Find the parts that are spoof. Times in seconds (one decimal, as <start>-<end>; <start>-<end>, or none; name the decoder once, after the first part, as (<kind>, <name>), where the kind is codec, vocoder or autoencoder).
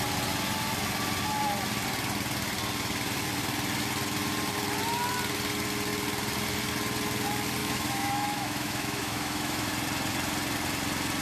7.6-9.7 (autoencoder, DAC-VAE)